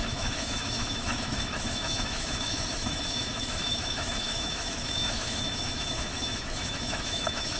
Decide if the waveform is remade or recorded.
remade